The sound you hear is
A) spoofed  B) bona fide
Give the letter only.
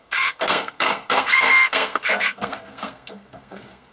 A